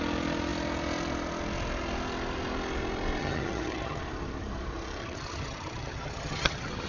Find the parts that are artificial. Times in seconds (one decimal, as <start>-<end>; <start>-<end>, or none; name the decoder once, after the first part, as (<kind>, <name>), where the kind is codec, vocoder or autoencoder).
3.2-4.0 (vocoder, HiFi-GAN); 5.0-6.9